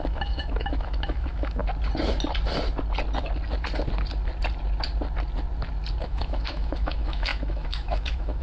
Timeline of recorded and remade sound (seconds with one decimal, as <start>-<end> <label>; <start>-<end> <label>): 0.0-1.6 remade; 1.6-6.0 recorded; 6.0-8.4 remade